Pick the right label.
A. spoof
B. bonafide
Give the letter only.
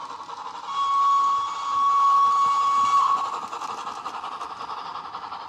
B